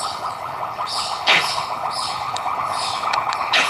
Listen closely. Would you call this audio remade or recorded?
remade